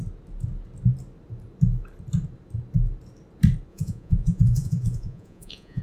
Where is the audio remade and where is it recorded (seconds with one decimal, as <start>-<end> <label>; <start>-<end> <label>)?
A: 0.0-3.7 recorded; 3.7-5.8 remade